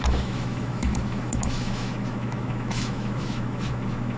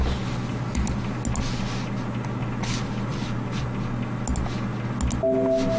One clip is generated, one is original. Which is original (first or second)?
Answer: second